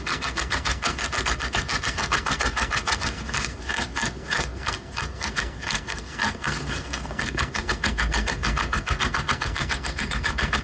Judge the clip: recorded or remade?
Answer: remade